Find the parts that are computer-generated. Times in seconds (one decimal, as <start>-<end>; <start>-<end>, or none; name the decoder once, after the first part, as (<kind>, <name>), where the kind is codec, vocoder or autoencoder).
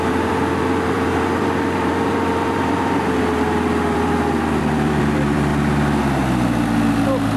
0.0-5.5 (vocoder, BigVGAN v2)